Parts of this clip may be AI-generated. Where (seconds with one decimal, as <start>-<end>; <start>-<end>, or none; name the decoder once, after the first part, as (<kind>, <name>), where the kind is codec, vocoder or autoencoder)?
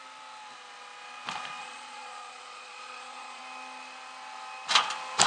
1.6-3.4 (vocoder, Vocos)